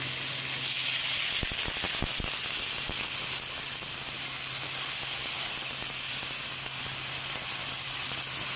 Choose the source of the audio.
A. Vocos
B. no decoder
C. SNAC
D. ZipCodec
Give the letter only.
B